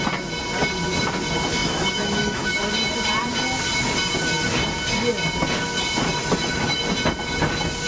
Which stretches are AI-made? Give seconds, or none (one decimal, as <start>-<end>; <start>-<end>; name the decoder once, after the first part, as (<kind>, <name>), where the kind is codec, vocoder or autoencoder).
1.6-2.6 (autoencoder, DAC-VAE); 6.2-6.8